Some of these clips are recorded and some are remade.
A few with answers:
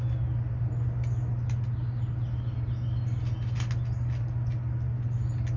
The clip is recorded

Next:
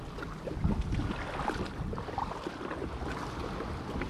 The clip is recorded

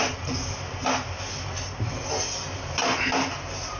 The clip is recorded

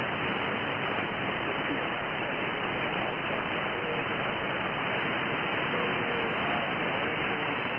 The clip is recorded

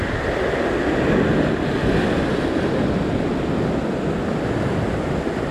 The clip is recorded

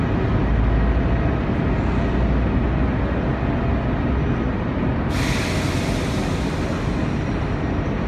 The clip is recorded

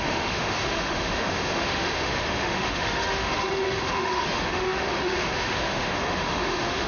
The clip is remade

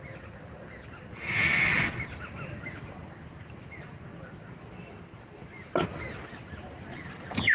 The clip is recorded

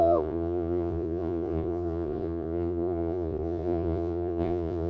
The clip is remade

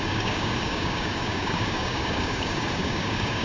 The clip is remade